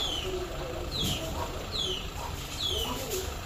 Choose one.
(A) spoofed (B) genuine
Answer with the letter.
B